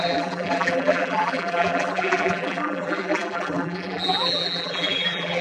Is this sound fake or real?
fake